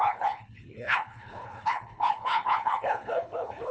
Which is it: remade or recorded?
remade